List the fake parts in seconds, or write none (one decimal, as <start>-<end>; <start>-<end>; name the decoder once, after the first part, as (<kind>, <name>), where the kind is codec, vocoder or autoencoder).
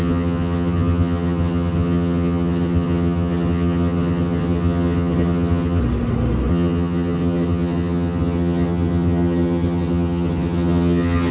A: 0.0-5.8 (vocoder, HiFi-GAN); 6.5-11.3